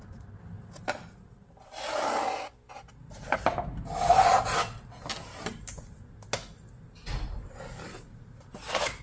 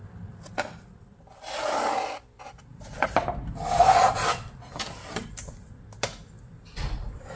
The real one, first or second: first